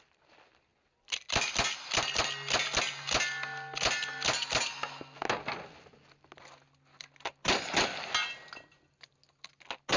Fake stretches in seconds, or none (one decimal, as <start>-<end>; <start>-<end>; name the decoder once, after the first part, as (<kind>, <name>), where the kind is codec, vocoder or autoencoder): none